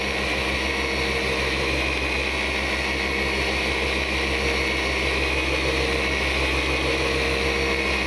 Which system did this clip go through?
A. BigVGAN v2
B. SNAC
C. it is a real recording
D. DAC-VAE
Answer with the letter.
C